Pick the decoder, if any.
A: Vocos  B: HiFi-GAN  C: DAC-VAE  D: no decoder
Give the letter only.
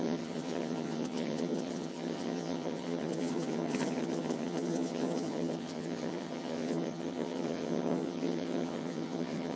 B